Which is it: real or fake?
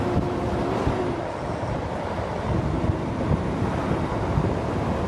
real